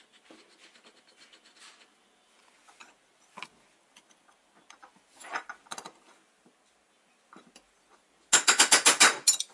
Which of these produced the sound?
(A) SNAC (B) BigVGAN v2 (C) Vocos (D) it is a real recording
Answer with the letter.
D